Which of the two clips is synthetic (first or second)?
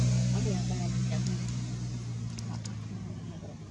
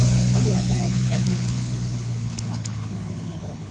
second